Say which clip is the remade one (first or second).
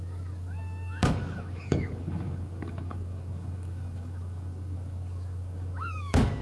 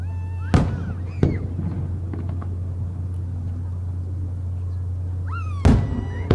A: first